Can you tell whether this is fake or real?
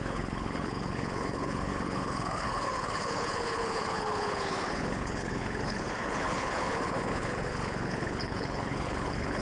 fake